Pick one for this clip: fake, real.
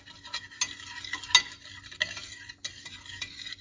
real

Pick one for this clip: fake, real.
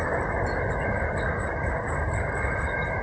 real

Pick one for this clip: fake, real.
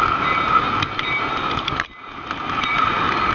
real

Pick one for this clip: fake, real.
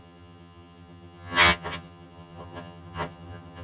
fake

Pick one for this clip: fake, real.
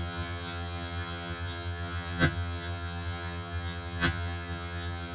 fake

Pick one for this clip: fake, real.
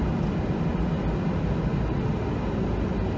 real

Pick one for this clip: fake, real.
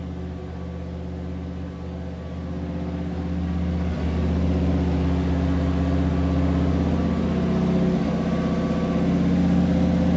real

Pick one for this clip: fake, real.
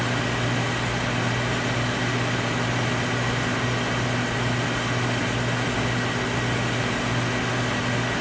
real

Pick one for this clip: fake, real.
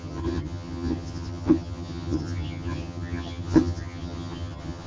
fake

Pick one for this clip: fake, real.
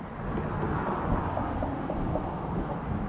real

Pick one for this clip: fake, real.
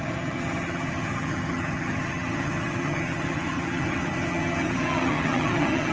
fake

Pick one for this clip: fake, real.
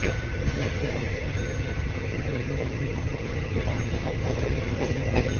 fake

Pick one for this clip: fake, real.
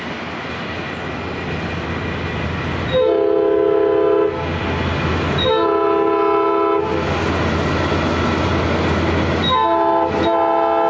real